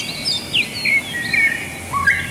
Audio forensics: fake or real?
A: real